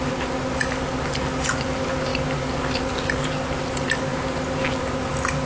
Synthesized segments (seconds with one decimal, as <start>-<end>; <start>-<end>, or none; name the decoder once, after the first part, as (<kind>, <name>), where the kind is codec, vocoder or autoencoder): none